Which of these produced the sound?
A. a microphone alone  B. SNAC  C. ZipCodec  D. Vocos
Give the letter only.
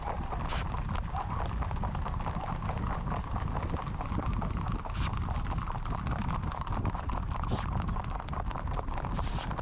A